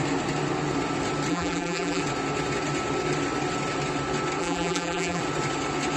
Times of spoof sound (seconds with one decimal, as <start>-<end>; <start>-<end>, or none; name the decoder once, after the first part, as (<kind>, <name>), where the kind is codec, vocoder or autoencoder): 1.3-2.0 (vocoder, BigVGAN v2); 4.4-5.2